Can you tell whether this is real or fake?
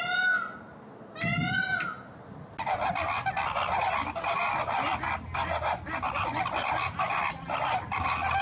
real